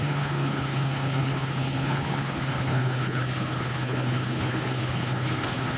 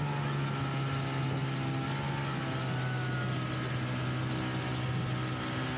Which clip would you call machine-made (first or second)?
first